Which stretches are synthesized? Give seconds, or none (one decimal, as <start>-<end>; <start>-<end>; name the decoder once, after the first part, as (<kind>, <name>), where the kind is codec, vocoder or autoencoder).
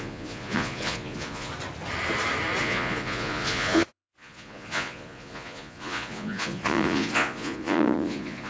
0.0-1.5 (vocoder, Vocos); 2.6-8.5